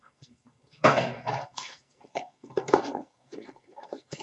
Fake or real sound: fake